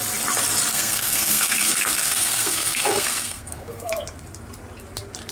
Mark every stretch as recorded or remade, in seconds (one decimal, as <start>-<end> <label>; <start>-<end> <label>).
0.0-0.7 recorded; 0.7-3.9 remade; 3.9-5.3 recorded